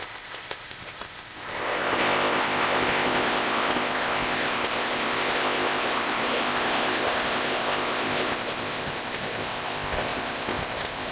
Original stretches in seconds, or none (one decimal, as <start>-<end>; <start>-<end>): none